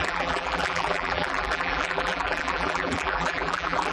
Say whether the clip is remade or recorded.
remade